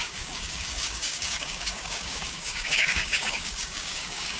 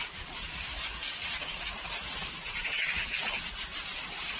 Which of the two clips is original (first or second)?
second